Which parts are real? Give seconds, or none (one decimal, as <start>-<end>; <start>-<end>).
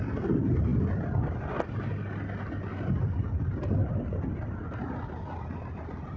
0.0-6.2